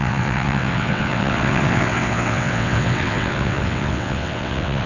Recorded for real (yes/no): no